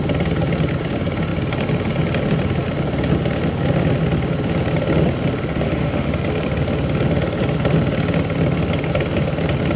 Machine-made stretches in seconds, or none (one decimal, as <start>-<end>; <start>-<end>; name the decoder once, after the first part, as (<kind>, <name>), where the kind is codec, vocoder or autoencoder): 5.5-6.1 (autoencoder, DAC-VAE)